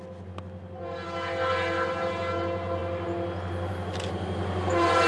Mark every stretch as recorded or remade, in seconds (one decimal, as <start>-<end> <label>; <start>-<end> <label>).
0.0-5.1 recorded